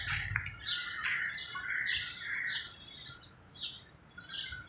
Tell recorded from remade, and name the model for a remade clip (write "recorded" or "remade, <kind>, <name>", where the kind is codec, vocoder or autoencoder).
recorded